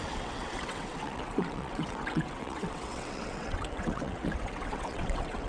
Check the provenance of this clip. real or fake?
fake